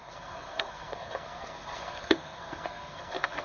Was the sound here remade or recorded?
remade